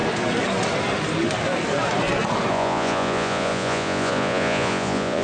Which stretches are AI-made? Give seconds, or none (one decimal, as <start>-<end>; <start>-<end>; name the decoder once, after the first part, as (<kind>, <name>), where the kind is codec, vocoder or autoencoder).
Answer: 2.5-5.2 (vocoder, Vocos)